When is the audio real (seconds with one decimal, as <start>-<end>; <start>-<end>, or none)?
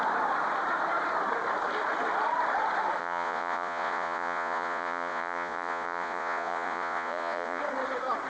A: 0.0-3.0; 7.6-8.3